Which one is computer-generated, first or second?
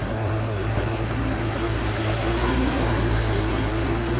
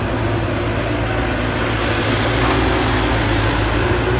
first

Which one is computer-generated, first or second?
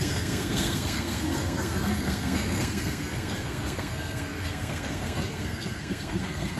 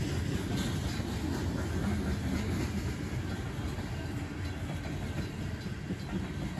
first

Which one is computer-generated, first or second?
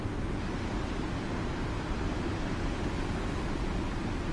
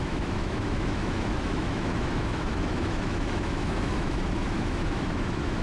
second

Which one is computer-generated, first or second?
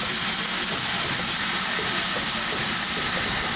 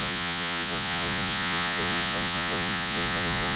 second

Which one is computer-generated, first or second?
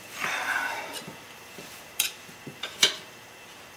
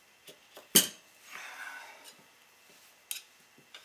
first